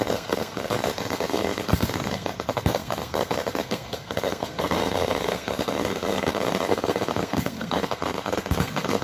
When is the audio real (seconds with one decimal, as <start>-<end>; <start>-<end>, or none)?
none